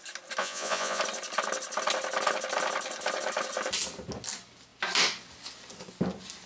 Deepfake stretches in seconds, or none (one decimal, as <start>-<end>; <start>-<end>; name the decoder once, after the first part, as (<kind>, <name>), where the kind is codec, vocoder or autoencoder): 0.4-1.0 (vocoder, Vocos)